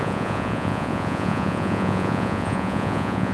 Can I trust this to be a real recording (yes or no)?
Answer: no